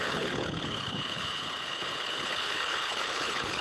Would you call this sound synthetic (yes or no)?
yes